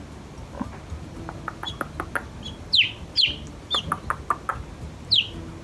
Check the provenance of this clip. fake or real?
real